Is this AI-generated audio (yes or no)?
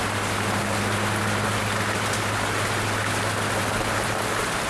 no